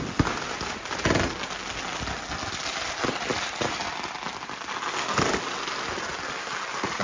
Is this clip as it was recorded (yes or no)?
yes